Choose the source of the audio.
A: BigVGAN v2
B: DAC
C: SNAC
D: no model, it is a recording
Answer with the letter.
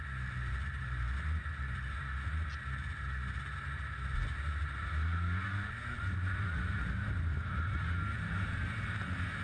D